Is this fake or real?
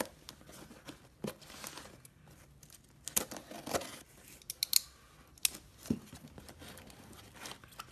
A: real